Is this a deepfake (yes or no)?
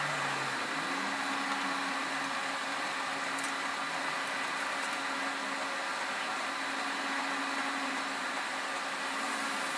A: no